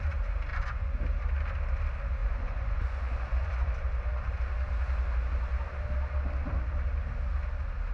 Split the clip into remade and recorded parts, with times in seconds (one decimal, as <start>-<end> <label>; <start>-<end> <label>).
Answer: 0.0-0.5 recorded; 0.5-1.0 remade; 1.0-2.2 recorded; 2.2-3.7 remade; 3.7-7.9 recorded